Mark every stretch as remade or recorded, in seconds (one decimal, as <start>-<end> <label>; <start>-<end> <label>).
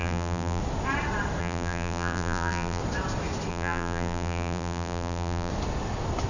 0.0-0.6 remade; 0.6-1.4 recorded; 1.4-2.8 remade; 2.8-3.5 recorded; 3.5-5.5 remade; 5.5-6.3 recorded